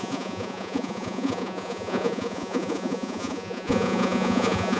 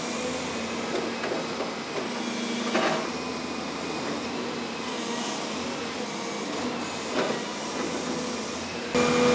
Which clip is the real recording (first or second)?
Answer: second